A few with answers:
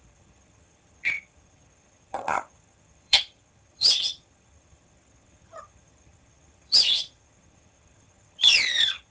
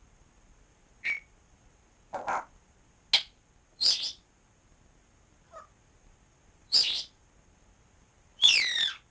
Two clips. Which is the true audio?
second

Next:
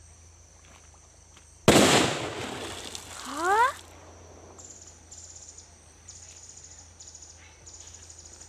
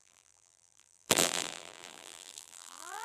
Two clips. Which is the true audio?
first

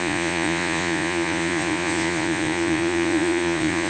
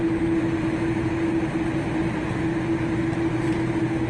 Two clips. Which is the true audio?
second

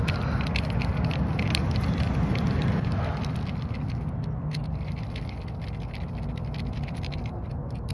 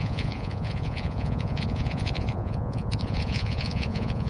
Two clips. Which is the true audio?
first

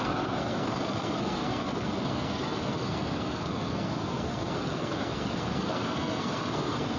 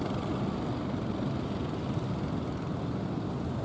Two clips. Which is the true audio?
second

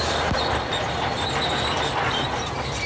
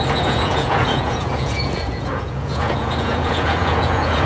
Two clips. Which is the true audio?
first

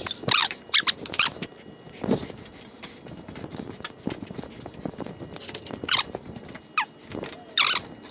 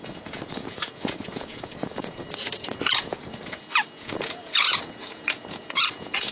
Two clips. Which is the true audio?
first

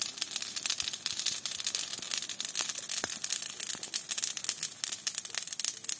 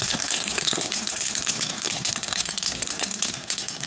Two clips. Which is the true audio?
first